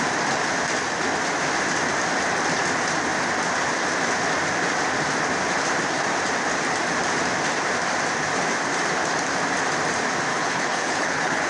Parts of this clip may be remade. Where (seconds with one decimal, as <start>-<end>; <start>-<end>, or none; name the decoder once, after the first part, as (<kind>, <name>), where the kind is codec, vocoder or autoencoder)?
10.3-11.5 (codec, HILCodec)